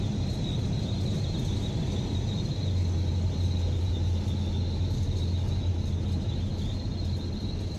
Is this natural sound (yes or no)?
yes